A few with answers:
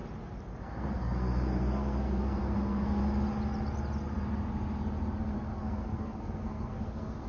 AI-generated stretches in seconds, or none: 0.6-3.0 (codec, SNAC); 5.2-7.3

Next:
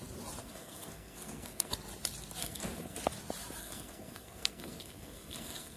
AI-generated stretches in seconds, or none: 0.4-1.7 (codec, SNAC); 2.4-3.0; 3.6-5.8

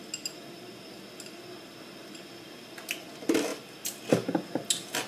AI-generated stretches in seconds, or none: none

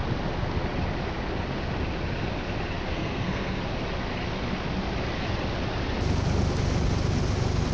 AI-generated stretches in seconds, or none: 2.9-3.6 (codec, SNAC)

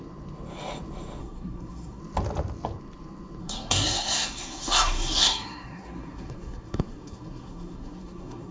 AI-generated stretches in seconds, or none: 1.2-2.0 (codec, SNAC); 3.4-8.5

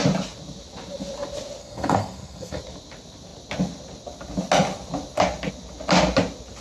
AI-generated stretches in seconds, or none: 1.6-2.6 (codec, SNAC)

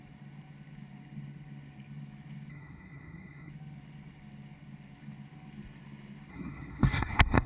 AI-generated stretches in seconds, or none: 2.5-3.5 (codec, SNAC); 6.3-7.5

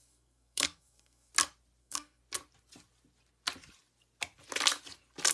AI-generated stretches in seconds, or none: 0.0-1.3 (codec, SNAC); 1.8-2.2